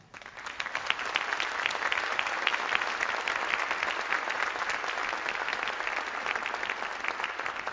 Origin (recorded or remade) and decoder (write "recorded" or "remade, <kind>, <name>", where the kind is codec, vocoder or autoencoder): recorded